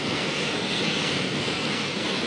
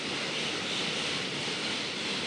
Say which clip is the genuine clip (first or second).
second